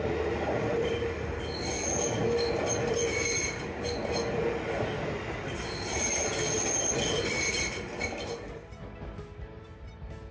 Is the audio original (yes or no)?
yes